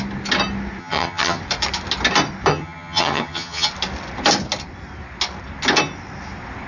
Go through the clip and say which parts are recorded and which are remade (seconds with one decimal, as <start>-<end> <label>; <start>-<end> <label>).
0.0-0.8 recorded; 0.8-1.4 remade; 1.4-2.5 recorded; 2.5-3.7 remade; 3.7-6.7 recorded